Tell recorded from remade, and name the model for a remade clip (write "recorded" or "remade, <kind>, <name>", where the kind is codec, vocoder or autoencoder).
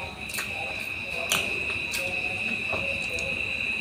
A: recorded